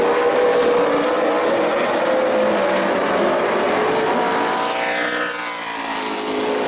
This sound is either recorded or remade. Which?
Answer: recorded